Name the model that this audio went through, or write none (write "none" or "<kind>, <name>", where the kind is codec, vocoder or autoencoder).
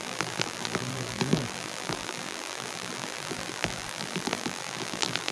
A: vocoder, BigVGAN v2